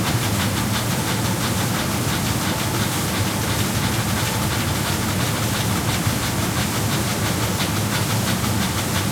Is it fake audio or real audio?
real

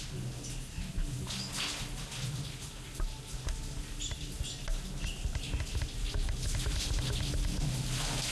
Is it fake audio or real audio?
real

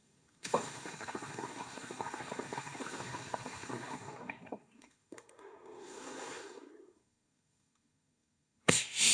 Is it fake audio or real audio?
fake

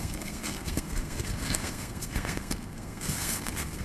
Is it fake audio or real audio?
fake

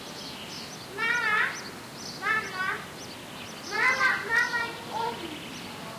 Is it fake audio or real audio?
real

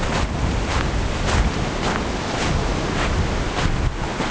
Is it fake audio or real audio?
real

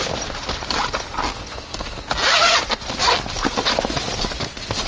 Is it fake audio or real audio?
real